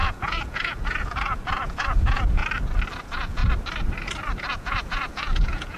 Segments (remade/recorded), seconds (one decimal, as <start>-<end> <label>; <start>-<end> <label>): 0.0-2.4 remade; 2.4-3.0 recorded; 3.0-3.4 remade; 3.4-4.5 recorded; 4.5-5.8 remade